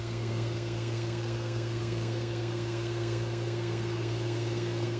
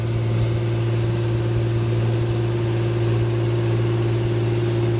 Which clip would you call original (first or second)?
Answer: second